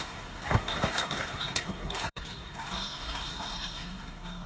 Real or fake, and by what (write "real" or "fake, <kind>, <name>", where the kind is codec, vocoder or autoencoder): fake, codec, SNAC